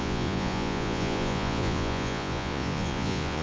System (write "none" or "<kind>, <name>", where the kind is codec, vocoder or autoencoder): vocoder, Vocos